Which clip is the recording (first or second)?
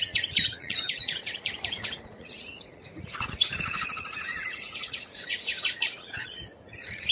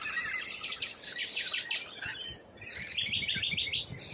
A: second